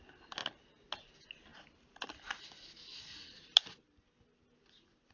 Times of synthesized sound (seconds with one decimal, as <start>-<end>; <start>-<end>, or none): none